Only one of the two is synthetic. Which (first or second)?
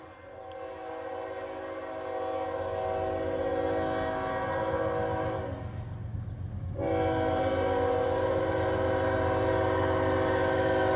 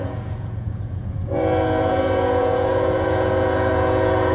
second